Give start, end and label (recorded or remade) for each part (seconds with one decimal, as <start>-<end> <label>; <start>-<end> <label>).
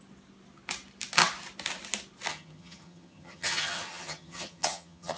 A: 0.0-2.3 recorded; 2.3-5.2 remade